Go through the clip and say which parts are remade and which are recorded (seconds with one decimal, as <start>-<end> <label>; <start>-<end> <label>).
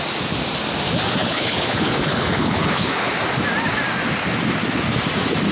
0.0-1.2 recorded; 1.2-3.1 remade; 3.1-5.5 recorded